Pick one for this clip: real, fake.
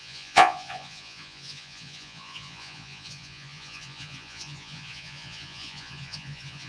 fake